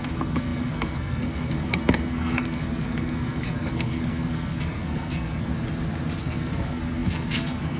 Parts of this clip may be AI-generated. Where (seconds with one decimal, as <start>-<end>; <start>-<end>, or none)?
0.0-5.5; 6.2-7.8